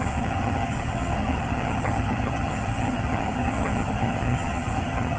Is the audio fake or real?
fake